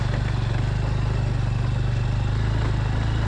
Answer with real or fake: real